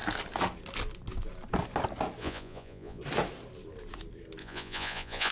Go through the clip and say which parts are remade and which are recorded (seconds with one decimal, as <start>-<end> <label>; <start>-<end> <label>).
0.0-2.2 recorded; 2.2-3.0 remade; 3.0-4.4 recorded; 4.4-5.3 remade